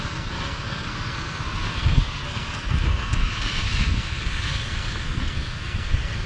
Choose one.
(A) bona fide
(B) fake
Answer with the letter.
B